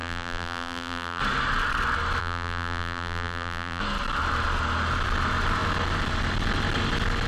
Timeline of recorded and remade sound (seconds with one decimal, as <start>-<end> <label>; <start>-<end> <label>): 0.0-1.2 remade; 1.2-2.2 recorded; 2.2-3.8 remade; 3.8-7.3 recorded